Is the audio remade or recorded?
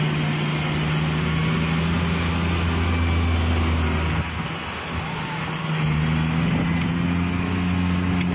recorded